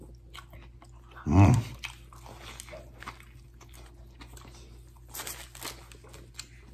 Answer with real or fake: real